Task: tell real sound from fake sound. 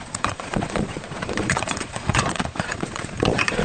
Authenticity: fake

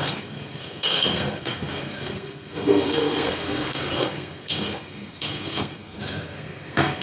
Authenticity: fake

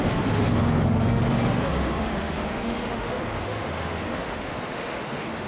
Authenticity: fake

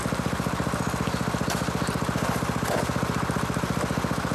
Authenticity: real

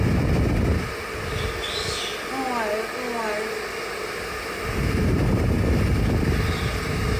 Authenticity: real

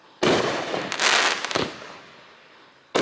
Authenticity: real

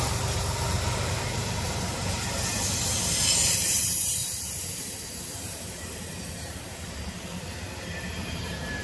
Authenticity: fake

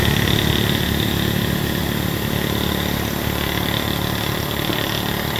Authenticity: real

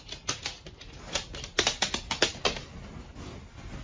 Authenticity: real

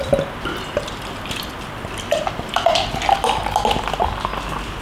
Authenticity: real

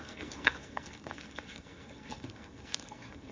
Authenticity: fake